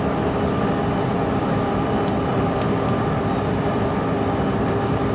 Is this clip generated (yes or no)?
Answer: no